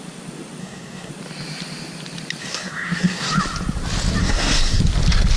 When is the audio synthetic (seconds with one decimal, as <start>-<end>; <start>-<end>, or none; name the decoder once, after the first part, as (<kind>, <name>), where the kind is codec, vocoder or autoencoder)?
0.6-1.1 (codec, SNAC); 2.4-3.3; 4.2-4.8